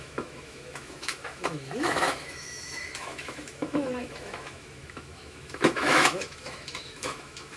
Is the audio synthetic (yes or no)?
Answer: yes